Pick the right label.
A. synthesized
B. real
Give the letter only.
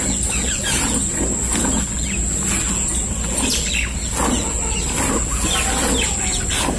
B